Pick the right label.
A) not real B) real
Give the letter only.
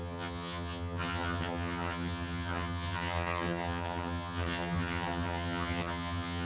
A